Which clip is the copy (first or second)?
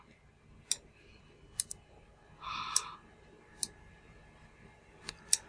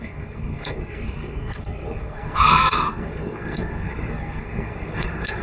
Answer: second